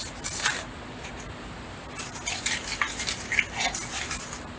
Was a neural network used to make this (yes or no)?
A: no